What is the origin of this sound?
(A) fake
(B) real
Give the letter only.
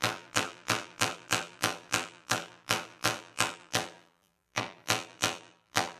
A